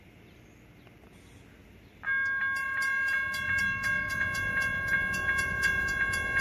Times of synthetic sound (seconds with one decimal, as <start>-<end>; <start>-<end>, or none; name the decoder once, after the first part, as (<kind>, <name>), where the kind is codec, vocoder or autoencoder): 4.1-6.4 (vocoder, Vocos)